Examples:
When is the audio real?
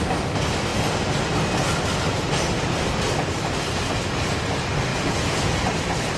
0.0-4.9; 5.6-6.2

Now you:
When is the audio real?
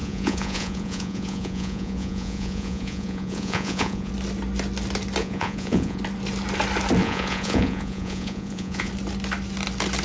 4.1-5.2; 6.0-7.0; 8.9-10.0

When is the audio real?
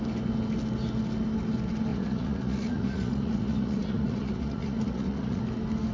0.0-1.9; 5.4-5.9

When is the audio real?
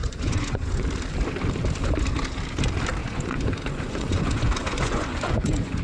0.8-3.0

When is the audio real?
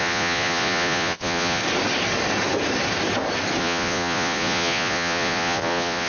1.6-3.6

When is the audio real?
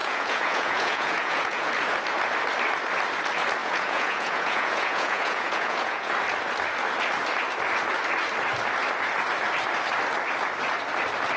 1.7-3.6; 6.1-11.4